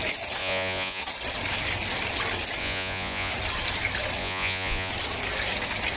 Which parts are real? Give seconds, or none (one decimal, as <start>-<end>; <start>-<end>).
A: 0.0-0.4; 1.0-2.6; 3.3-4.2; 4.9-6.0